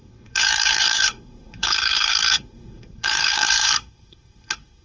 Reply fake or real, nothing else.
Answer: fake